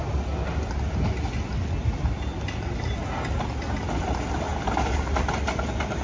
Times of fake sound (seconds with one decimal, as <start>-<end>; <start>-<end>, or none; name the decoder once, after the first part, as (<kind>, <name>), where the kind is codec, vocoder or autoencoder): none